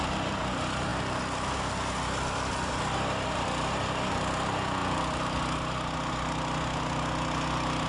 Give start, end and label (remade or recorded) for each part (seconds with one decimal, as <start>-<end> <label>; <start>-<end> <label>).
0.0-7.9 recorded